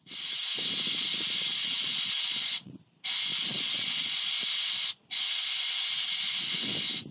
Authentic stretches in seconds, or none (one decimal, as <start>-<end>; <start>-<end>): 0.0-1.5; 2.7-3.5; 4.3-7.1